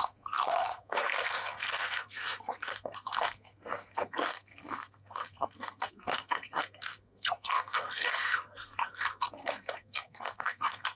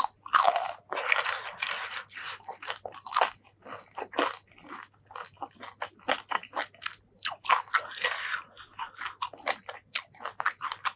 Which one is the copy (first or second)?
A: first